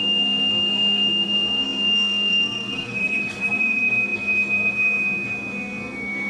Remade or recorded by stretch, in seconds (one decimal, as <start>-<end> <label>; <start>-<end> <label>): 0.0-6.3 remade